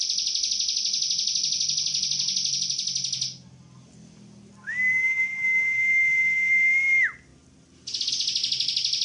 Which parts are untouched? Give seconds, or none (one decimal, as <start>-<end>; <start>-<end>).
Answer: 0.0-9.0